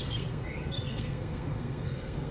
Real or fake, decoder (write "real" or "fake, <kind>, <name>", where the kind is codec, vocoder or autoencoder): fake, codec, SNAC